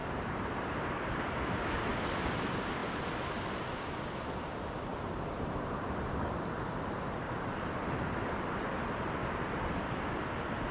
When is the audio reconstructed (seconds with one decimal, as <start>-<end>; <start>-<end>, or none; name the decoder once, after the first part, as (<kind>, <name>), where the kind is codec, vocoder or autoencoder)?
0.0-1.6 (vocoder, BigVGAN v2); 4.9-7.7